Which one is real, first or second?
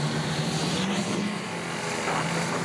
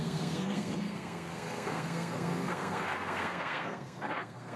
first